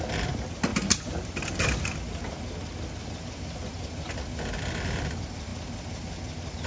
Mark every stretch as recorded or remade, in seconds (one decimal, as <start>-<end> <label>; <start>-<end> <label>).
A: 0.0-6.7 recorded